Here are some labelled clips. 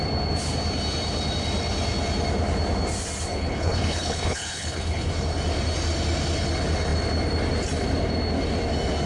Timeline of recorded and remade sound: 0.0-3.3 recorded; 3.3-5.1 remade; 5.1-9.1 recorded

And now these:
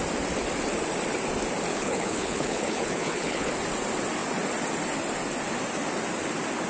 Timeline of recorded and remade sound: 0.0-1.7 recorded; 1.7-3.5 remade; 3.5-6.7 recorded